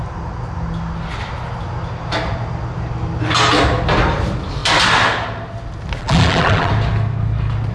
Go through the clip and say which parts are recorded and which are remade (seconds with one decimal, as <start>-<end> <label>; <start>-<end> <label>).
0.0-6.0 recorded; 6.0-6.7 remade; 6.7-7.7 recorded